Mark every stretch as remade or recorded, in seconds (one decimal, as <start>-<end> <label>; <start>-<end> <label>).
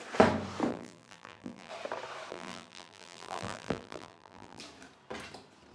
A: 0.0-0.7 recorded; 0.7-1.7 remade; 1.7-2.3 recorded; 2.3-4.6 remade; 4.6-5.7 recorded